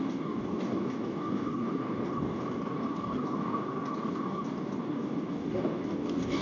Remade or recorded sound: remade